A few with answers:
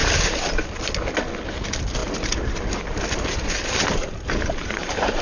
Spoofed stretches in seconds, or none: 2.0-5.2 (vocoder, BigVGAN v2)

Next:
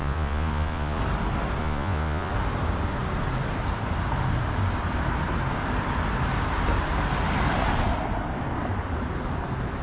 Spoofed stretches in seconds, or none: 0.0-1.0 (vocoder, Vocos); 1.6-2.3

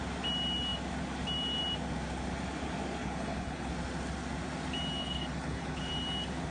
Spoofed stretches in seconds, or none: 3.0-3.7 (codec, HILCodec); 5.0-5.9

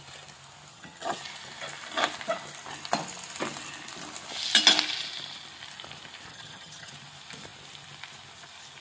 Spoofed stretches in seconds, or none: 0.7-1.2 (vocoder, HiFi-GAN); 6.3-6.9